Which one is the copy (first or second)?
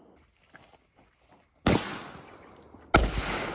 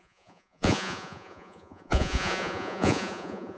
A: second